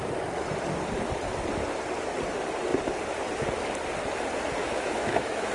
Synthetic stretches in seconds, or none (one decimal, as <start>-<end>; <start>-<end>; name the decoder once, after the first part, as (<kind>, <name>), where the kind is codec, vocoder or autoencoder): 4.6-5.5 (autoencoder, DAC-VAE)